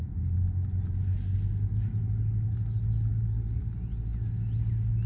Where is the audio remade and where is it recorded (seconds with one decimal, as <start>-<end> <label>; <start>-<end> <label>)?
0.0-5.1 recorded